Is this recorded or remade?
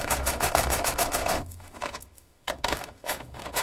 remade